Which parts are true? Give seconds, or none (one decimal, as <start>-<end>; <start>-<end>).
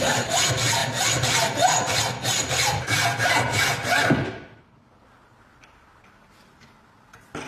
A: 0.0-7.5